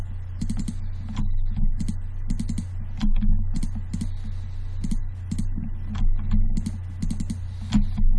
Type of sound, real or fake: real